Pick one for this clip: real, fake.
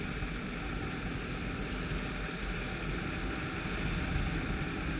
real